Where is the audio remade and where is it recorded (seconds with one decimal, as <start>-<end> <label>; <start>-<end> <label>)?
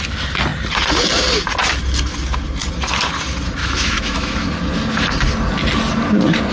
0.0-3.6 recorded; 3.6-4.5 remade; 4.5-6.5 recorded